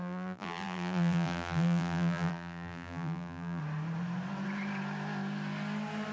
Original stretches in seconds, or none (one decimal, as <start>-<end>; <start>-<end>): 3.6-6.1